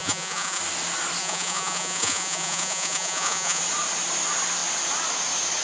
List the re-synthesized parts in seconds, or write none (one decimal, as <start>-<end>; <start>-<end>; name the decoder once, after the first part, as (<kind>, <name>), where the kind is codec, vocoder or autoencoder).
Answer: 0.0-0.6 (vocoder, Vocos); 1.2-3.6